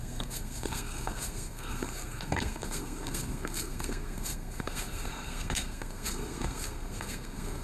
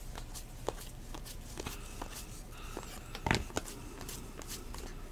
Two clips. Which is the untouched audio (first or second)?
second